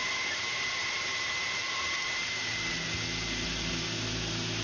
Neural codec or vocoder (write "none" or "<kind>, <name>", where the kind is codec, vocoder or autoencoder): none